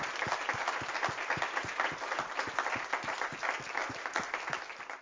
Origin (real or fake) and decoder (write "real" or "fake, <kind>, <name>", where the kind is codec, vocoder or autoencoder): real